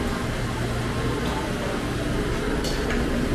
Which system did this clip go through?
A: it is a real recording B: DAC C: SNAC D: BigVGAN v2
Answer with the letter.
A